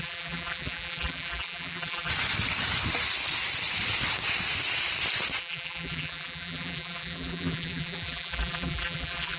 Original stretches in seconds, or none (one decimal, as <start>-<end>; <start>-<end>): 2.1-5.4